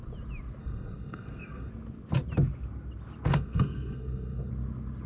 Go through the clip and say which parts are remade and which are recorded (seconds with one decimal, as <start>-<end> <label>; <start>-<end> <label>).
0.0-0.6 recorded; 0.6-1.7 remade; 1.7-3.3 recorded; 3.3-4.5 remade; 4.5-5.1 recorded